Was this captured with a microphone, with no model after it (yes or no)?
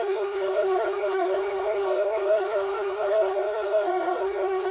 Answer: no